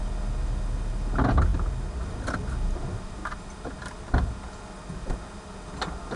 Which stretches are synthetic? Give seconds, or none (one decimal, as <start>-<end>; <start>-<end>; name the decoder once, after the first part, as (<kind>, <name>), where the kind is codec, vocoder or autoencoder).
1.5-2.0 (vocoder, BigVGAN v2); 3.2-4.4